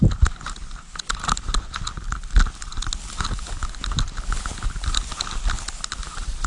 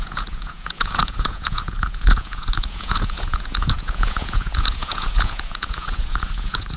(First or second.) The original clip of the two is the first